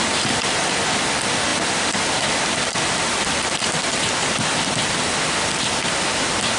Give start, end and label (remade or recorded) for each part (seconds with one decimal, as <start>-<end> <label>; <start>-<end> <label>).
0.0-1.5 recorded; 1.5-5.5 remade; 5.5-6.6 recorded